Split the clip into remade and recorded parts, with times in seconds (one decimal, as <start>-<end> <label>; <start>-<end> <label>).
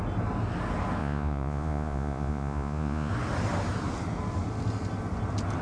0.0-1.0 recorded; 1.0-3.1 remade; 3.1-5.6 recorded